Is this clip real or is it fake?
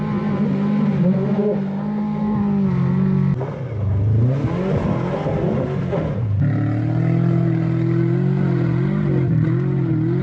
real